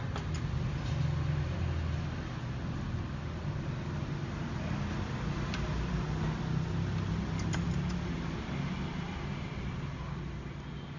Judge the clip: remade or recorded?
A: recorded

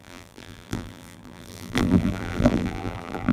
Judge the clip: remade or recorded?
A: remade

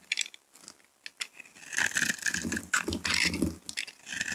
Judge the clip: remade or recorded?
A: recorded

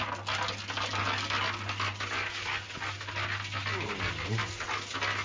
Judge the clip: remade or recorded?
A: recorded